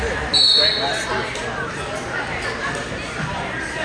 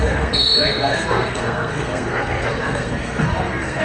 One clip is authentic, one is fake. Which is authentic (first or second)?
first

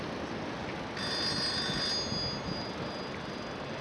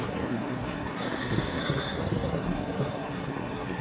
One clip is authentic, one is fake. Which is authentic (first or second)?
first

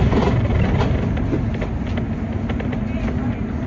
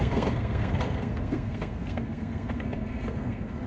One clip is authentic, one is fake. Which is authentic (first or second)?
first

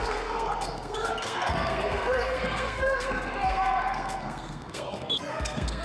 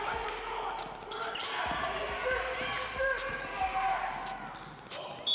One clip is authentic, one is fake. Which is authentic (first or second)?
second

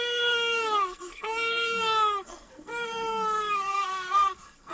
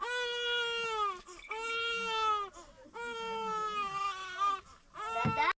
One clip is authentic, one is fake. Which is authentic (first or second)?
second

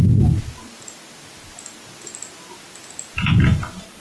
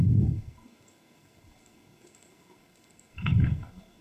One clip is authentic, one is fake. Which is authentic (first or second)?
first